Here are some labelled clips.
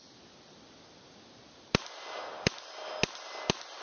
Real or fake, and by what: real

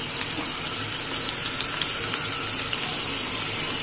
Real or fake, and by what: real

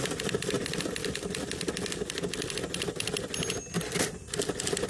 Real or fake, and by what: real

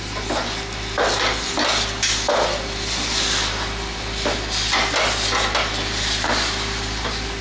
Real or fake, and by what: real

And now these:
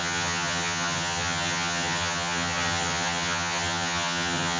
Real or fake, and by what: fake, vocoder, HiFi-GAN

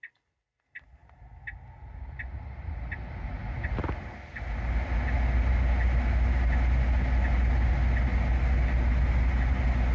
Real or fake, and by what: real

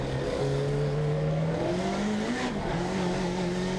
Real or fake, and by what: fake, codec, DAC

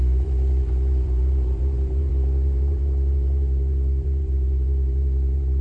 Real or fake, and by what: fake, vocoder, BigVGAN v2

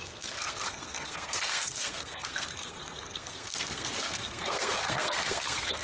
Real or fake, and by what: fake, codec, SNAC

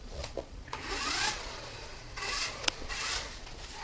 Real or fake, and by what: fake, vocoder, Vocos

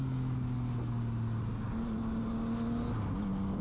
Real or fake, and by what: real